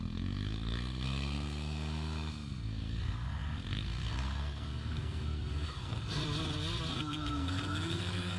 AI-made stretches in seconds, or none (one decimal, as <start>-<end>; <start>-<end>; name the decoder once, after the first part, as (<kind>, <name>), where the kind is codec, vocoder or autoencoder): 0.0-6.2 (codec, SNAC); 7.0-8.4